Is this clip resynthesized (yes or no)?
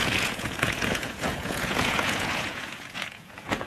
yes